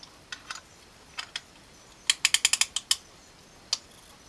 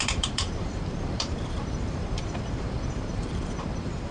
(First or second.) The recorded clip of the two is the first